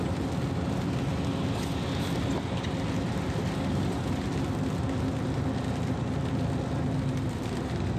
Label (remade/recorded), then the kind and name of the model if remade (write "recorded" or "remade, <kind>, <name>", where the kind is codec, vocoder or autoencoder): recorded